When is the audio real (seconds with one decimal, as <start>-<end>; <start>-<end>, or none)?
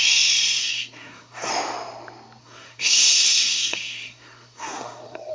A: 0.0-0.6; 1.5-2.4